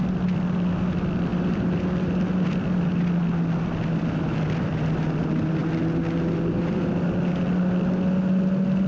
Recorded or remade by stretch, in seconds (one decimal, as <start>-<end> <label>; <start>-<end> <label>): 0.0-8.9 recorded